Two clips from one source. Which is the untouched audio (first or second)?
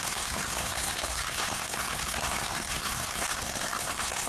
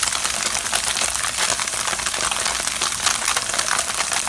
second